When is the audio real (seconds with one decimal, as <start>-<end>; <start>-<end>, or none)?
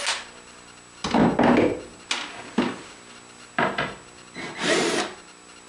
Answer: 0.0-5.7